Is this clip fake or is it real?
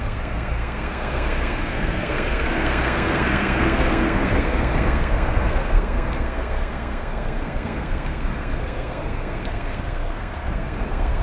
fake